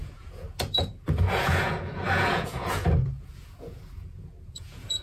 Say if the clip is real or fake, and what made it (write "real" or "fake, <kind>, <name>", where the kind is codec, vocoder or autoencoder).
fake, vocoder, Vocos